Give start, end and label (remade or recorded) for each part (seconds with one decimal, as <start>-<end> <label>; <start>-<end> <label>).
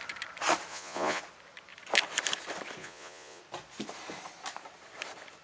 0.0-0.7 recorded; 0.7-1.2 remade; 1.2-2.8 recorded; 2.8-3.4 remade; 3.4-5.4 recorded